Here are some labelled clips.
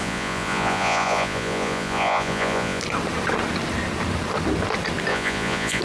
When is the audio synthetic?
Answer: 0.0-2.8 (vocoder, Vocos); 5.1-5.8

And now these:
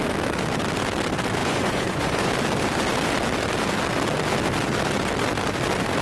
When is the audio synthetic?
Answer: 1.4-2.3 (vocoder, Vocos)

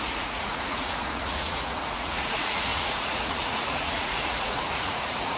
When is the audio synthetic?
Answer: 0.0-5.4 (vocoder, Vocos)